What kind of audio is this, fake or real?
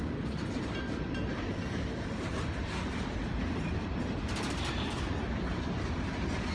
real